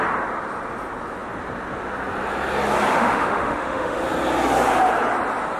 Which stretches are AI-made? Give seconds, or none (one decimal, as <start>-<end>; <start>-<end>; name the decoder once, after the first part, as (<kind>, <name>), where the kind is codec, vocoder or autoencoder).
2.9-4.0 (autoencoder, DAC-VAE)